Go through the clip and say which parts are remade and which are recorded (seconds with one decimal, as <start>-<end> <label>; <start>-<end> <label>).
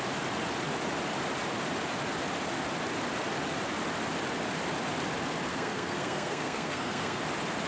0.0-5.5 recorded; 5.5-7.2 remade; 7.2-7.7 recorded